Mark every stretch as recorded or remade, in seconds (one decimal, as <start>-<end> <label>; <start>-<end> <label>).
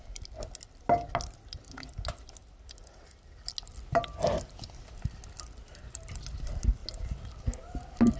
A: 0.0-8.2 recorded